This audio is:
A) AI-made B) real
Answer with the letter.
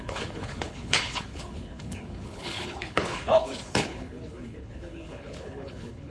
A